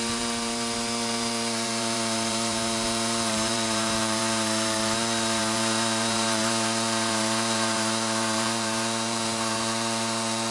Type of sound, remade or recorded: remade